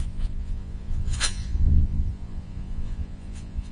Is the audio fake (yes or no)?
yes